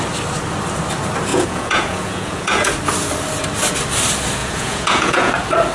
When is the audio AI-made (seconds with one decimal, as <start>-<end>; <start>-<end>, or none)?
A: 1.3-2.7; 4.4-5.3